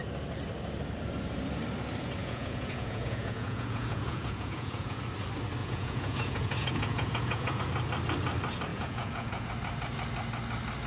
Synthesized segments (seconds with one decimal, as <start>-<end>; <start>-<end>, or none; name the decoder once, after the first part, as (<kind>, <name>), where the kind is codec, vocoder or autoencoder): 2.2-5.0 (vocoder, Vocos); 5.6-7.6; 8.7-9.5